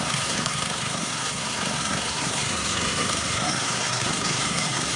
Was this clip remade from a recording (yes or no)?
yes